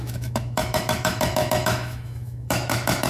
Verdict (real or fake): fake